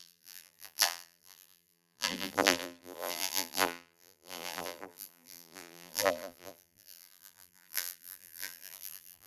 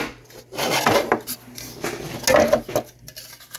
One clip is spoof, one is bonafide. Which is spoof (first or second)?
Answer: first